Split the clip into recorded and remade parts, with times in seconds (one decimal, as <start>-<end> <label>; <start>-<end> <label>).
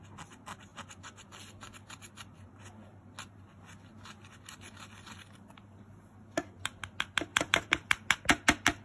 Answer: 0.0-7.3 recorded; 7.3-7.9 remade; 7.9-8.8 recorded